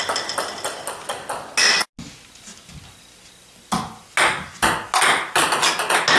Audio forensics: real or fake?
real